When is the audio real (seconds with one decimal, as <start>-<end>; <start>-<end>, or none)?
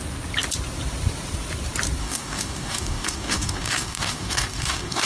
0.0-2.0